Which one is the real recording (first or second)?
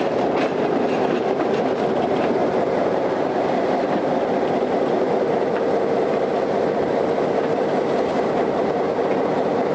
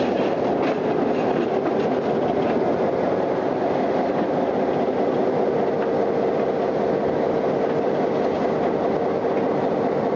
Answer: second